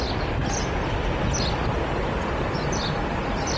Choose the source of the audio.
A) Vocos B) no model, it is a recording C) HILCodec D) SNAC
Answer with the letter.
B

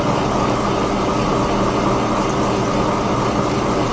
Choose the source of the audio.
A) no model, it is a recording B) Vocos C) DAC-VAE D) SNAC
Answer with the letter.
A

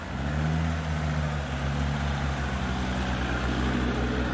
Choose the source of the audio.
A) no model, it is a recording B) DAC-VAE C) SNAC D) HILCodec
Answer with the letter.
A